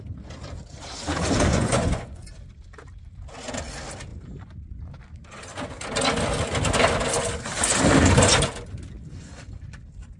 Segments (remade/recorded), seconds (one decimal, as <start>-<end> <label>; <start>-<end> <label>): 0.0-1.5 recorded; 1.5-2.3 remade; 2.3-10.2 recorded